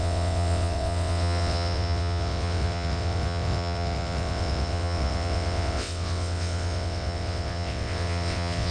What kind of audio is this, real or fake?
fake